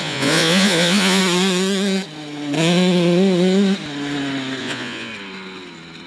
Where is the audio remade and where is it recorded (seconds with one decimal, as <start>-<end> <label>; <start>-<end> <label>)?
0.0-1.2 remade; 1.2-4.6 recorded; 4.6-5.1 remade; 5.1-6.1 recorded